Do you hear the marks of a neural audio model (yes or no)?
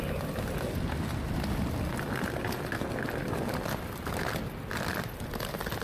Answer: no